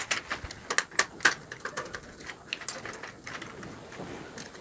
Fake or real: real